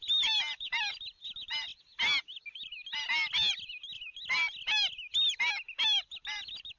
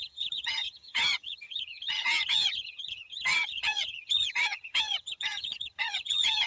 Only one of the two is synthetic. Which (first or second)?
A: second